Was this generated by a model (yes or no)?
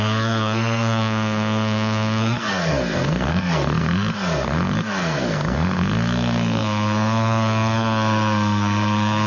yes